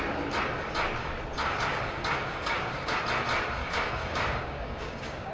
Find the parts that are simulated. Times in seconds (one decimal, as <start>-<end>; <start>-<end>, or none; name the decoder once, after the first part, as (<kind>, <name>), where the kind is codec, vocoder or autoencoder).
1.4-3.0 (codec, DAC); 3.6-5.3